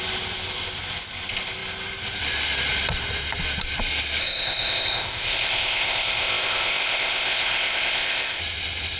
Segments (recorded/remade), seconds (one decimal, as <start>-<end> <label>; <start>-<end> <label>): 0.0-4.2 recorded; 4.2-8.4 remade; 8.4-9.0 recorded